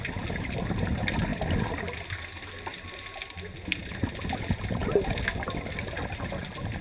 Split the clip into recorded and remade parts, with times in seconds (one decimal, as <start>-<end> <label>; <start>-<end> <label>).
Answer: 0.0-6.8 recorded